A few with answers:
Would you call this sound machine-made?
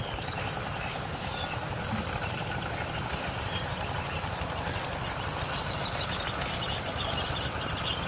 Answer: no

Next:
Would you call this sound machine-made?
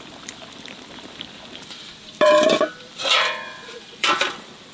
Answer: yes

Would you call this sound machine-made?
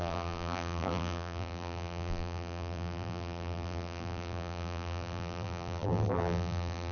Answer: yes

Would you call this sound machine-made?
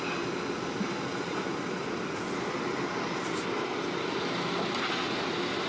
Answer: no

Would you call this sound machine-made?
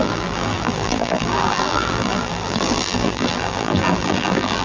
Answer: yes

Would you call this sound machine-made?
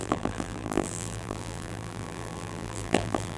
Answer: yes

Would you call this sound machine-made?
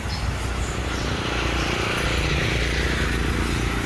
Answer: no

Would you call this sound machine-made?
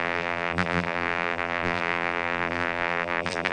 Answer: yes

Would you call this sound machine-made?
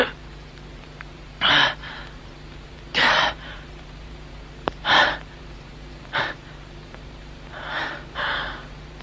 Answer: yes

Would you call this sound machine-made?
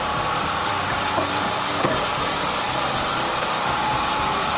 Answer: yes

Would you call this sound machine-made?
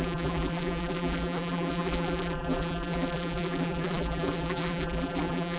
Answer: yes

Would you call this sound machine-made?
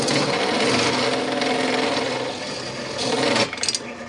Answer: no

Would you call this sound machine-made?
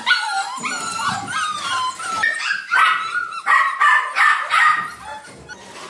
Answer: no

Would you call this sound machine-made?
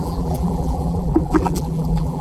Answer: yes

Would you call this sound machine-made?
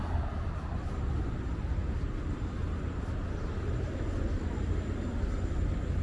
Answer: no